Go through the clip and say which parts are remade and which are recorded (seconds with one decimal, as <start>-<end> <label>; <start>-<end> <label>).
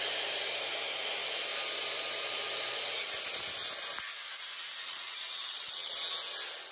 0.0-4.8 recorded; 4.8-5.9 remade; 5.9-6.7 recorded